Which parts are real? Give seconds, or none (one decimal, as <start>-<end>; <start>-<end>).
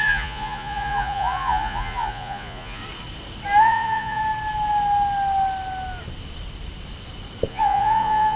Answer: 2.8-3.6; 4.2-7.5